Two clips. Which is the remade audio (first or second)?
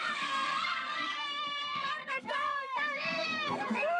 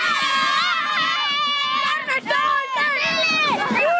first